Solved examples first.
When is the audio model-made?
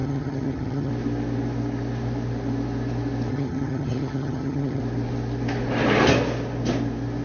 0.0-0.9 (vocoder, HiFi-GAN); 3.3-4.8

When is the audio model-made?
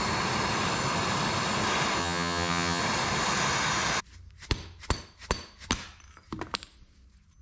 2.0-2.8 (vocoder, HiFi-GAN)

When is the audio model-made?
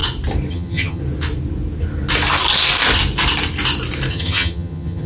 0.5-1.0 (vocoder, HiFi-GAN); 4.1-5.1